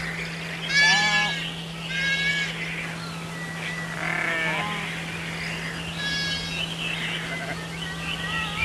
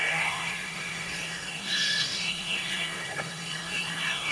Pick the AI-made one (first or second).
second